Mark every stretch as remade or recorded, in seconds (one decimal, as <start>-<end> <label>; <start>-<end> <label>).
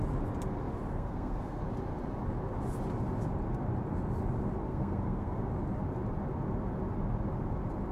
0.0-0.9 recorded; 0.9-1.6 remade; 1.6-4.7 recorded; 4.7-5.4 remade; 5.4-7.9 recorded